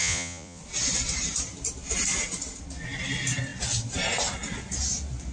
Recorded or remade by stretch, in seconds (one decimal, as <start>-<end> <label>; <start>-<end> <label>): 0.0-0.6 remade; 0.6-5.3 recorded

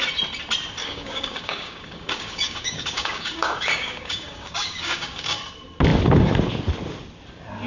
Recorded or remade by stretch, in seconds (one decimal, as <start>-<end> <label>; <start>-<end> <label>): 0.0-0.8 recorded; 0.8-5.4 remade; 5.4-7.7 recorded

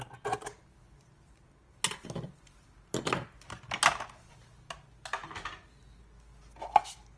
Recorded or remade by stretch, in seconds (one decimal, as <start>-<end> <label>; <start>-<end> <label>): 0.0-7.2 recorded